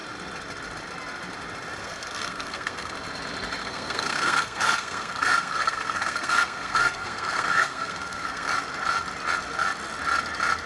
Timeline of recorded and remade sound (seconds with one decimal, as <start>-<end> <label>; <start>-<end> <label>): 0.0-1.8 recorded; 1.8-2.9 remade; 2.9-3.6 recorded; 3.6-8.5 remade; 8.5-10.7 recorded